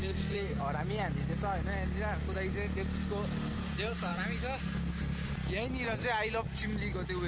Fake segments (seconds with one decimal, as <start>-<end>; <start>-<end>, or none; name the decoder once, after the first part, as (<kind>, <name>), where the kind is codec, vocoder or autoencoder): 0.0-0.6 (codec, SNAC)